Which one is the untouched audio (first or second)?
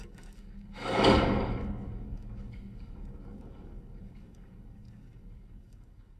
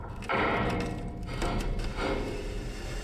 second